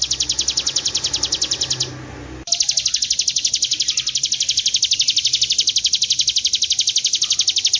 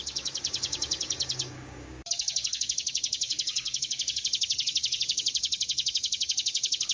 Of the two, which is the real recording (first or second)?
first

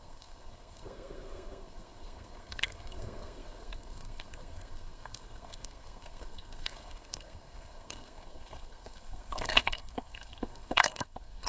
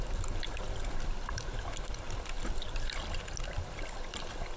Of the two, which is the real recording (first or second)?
second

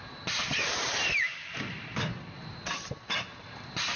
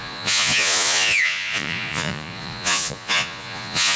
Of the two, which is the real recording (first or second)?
first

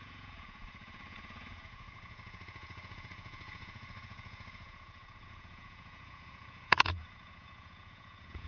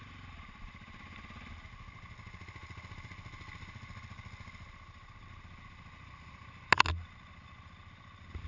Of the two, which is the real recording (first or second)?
second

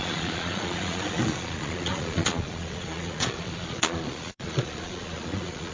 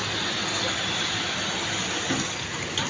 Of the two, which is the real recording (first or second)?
second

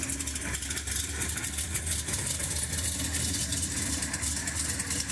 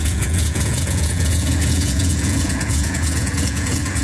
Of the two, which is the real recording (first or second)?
first